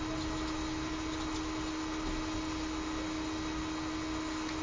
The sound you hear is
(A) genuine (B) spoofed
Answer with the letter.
A